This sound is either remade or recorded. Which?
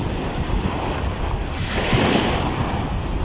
recorded